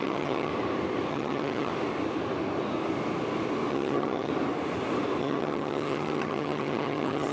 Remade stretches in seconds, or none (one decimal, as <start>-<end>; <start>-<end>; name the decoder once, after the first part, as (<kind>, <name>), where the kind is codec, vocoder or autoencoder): 0.0-0.5 (vocoder, HiFi-GAN); 1.1-1.7; 3.7-4.3; 5.2-7.3